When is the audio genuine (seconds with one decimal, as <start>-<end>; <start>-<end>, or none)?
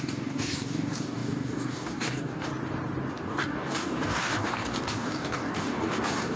2.5-3.1